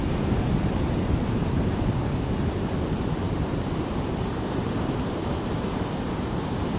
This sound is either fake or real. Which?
fake